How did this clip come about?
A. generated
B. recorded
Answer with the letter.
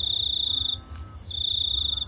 B